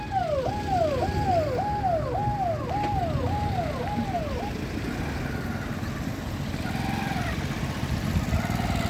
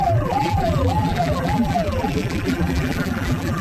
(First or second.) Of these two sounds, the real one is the first